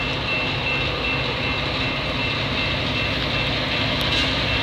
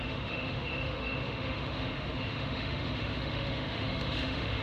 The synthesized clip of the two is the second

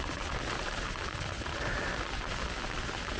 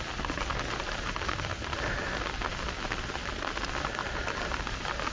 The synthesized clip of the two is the first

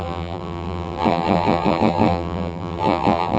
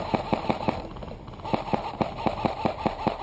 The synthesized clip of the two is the first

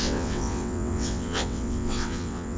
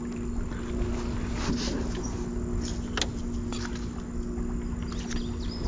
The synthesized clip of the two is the first